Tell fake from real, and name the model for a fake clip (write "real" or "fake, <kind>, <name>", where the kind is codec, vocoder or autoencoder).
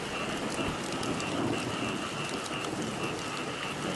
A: real